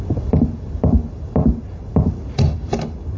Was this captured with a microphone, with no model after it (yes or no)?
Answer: yes